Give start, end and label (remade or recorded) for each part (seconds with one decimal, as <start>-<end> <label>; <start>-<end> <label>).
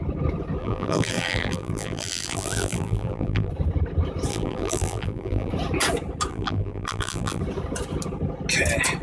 0.0-0.6 recorded; 0.6-3.5 remade; 3.5-4.3 recorded; 4.3-5.5 remade; 5.5-6.3 recorded; 6.3-7.4 remade; 7.4-9.0 recorded